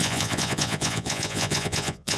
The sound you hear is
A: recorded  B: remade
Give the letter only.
B